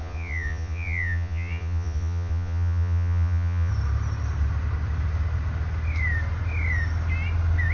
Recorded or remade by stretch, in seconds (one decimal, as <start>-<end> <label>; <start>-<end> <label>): 0.0-3.7 remade; 3.7-7.7 recorded